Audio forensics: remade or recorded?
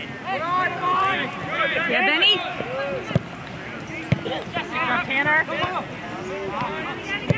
recorded